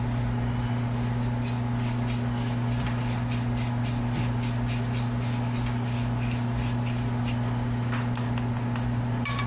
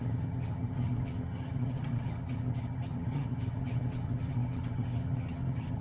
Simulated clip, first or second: second